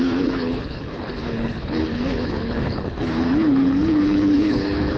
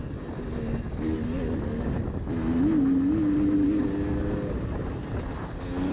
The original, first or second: second